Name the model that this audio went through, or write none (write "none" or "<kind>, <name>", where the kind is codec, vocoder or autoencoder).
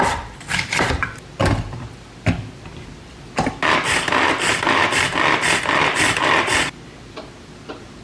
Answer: none